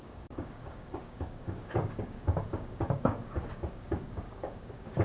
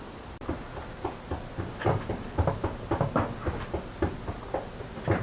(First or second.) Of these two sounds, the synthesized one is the first